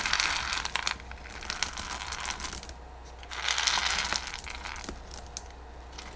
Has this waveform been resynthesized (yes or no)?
no